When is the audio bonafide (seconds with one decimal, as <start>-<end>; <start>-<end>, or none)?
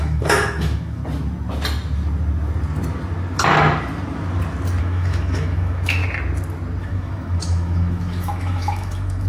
1.0-4.8; 6.0-6.8